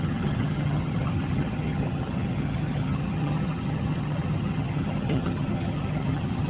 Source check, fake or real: fake